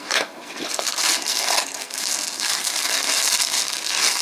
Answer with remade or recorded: remade